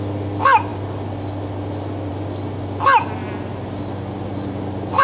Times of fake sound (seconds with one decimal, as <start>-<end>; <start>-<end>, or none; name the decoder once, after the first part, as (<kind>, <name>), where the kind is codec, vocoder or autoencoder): none